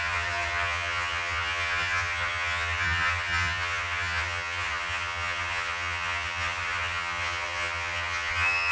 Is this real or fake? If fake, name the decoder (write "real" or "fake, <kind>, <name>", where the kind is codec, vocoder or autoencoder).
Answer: fake, vocoder, HiFi-GAN